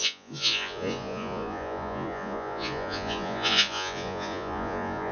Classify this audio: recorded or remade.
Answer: remade